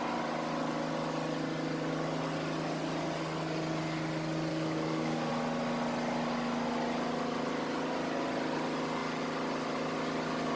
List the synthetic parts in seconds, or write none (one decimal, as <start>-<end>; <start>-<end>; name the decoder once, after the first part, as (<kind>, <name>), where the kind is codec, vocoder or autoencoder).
4.5-5.3 (codec, DAC)